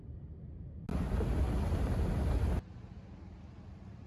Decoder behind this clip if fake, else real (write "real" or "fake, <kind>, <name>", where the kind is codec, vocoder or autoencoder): real